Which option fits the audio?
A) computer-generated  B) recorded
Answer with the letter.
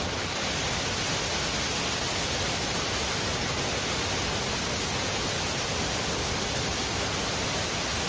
B